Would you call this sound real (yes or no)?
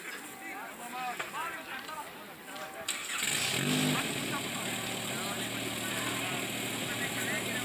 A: yes